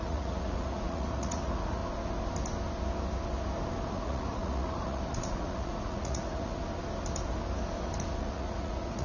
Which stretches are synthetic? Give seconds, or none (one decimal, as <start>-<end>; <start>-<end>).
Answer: 0.0-1.8; 3.9-6.6; 8.2-9.0